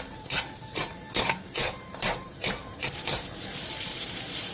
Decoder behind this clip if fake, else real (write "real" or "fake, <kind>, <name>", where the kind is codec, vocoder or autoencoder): fake, vocoder, BigVGAN v2